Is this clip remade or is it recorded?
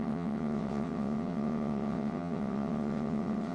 remade